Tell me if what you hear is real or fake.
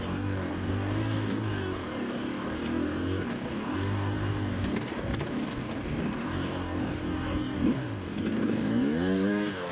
fake